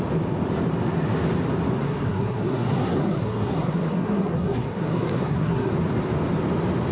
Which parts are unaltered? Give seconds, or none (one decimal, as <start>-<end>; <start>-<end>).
0.0-1.8; 5.7-6.9